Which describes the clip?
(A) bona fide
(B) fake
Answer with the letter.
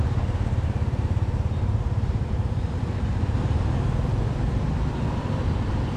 B